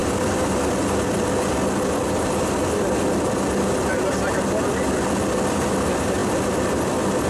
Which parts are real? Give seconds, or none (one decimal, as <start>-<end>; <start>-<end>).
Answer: 0.0-7.3